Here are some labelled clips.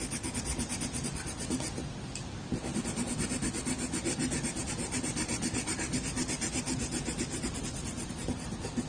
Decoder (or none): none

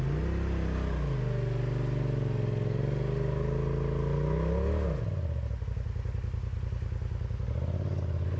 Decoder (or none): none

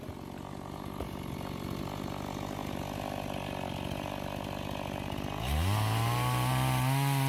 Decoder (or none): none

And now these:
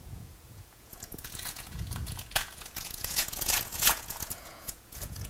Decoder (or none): vocoder, Vocos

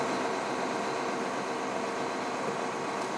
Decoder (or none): none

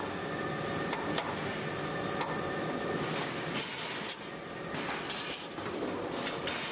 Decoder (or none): none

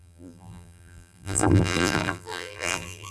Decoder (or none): vocoder, BigVGAN v2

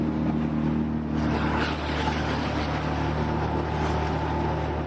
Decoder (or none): none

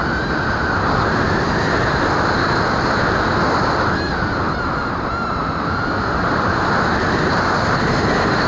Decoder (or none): none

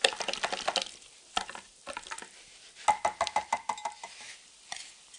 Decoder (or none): none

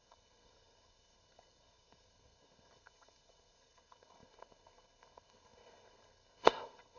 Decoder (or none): codec, SNAC